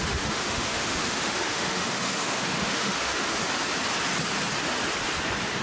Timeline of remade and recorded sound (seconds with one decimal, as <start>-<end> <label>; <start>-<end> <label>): 0.0-3.4 remade; 3.4-5.6 recorded